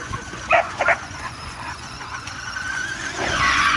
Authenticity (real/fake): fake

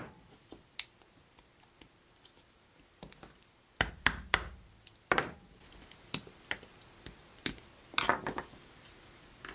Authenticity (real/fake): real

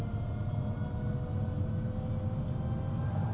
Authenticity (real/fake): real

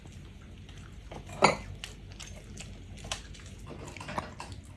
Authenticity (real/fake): real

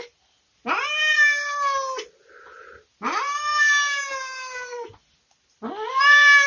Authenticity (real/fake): real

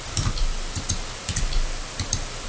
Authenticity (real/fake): real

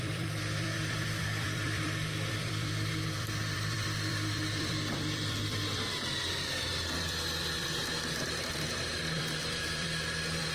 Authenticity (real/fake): fake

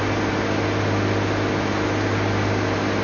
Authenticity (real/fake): real